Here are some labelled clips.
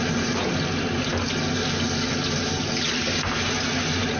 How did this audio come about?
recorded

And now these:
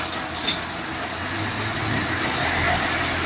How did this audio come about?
recorded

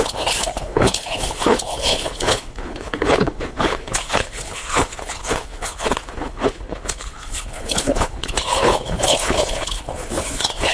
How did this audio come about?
remade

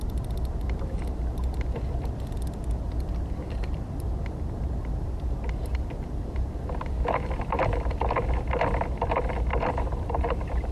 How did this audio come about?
remade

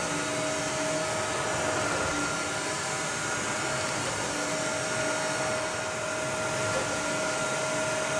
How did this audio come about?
recorded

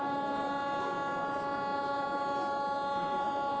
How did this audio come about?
recorded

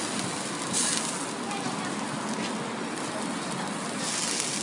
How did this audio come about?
recorded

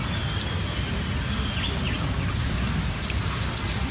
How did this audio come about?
recorded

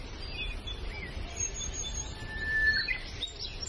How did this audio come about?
remade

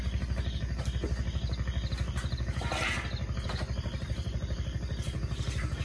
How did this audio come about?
recorded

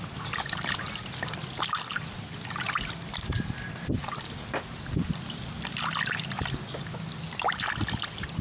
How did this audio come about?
recorded